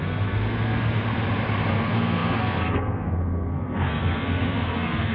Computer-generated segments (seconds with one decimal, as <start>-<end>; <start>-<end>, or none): 0.0-1.0; 1.7-5.1